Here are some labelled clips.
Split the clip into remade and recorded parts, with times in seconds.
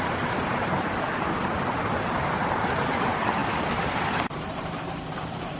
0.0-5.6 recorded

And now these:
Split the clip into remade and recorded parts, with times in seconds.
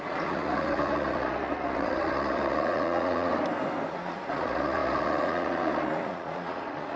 0.0-3.3 remade; 3.3-3.9 recorded; 3.9-7.0 remade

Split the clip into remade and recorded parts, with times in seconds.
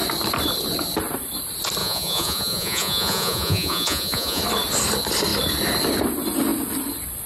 0.0-1.8 recorded; 1.8-4.4 remade; 4.4-7.3 recorded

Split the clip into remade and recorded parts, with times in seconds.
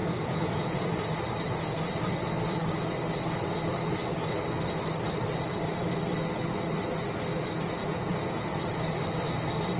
0.0-1.1 remade; 1.1-7.8 recorded; 7.8-8.6 remade; 8.6-9.8 recorded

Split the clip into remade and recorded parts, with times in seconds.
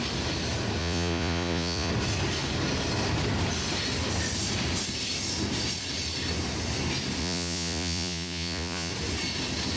0.0-0.8 recorded; 0.8-1.9 remade; 1.9-7.2 recorded; 7.2-8.9 remade; 8.9-9.8 recorded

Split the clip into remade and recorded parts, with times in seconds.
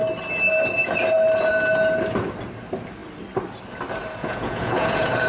0.0-4.2 recorded; 4.2-5.3 remade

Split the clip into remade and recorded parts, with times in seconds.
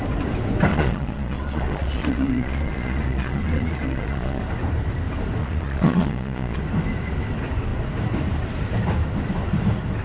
0.0-0.7 recorded; 0.7-4.4 remade; 4.4-5.4 recorded; 5.4-6.6 remade; 6.6-10.0 recorded